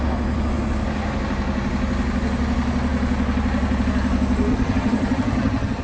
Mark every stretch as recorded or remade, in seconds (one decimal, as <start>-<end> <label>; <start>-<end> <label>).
0.0-4.5 recorded; 4.5-5.8 remade